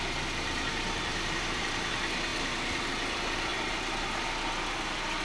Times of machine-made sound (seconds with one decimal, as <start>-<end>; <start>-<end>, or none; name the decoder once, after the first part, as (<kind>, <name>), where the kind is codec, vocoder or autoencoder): 0.7-1.9 (vocoder, BigVGAN v2)